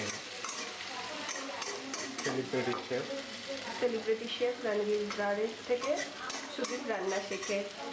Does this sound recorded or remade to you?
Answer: recorded